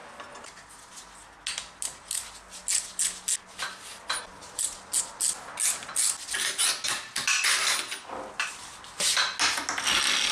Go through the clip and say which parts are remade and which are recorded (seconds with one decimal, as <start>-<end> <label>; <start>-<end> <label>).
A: 0.0-10.3 recorded